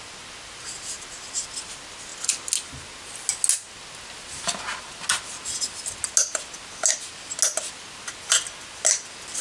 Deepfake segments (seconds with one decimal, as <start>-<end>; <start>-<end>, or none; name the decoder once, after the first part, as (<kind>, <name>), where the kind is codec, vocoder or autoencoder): none